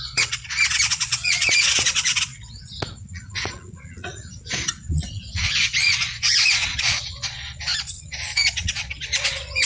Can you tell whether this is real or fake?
fake